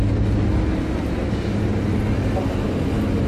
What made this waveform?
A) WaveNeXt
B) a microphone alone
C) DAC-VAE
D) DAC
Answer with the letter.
B